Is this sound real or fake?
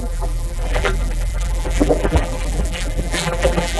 fake